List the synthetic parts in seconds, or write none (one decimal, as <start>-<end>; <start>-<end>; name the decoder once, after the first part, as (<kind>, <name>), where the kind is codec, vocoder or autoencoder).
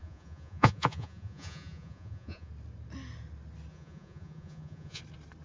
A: 0.0-2.5 (vocoder, Vocos); 3.7-5.0